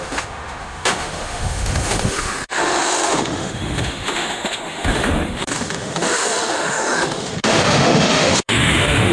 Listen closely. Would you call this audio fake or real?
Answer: fake